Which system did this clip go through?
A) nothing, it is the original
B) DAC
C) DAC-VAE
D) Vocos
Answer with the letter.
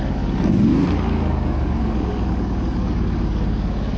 B